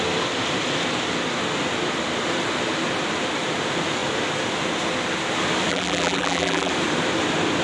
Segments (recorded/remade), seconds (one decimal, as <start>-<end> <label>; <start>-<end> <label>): 0.0-5.7 recorded; 5.7-6.7 remade; 6.7-7.6 recorded